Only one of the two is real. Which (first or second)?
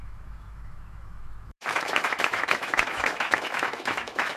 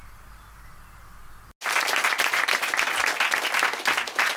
second